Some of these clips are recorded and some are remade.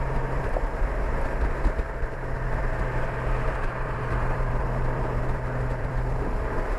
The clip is remade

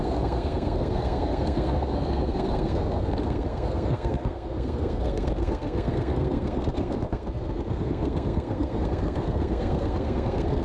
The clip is remade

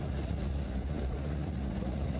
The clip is remade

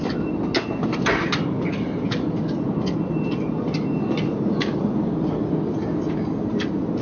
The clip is recorded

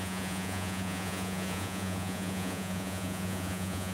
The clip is remade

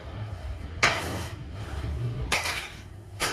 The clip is remade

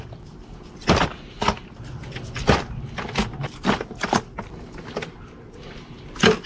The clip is recorded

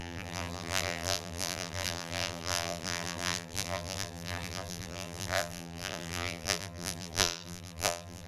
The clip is remade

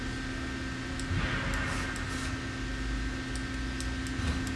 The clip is recorded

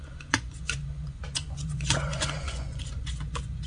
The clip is remade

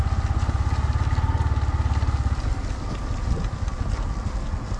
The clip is recorded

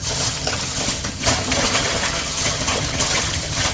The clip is remade